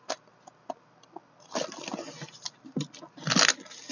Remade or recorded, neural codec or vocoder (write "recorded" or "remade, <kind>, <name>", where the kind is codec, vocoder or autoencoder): recorded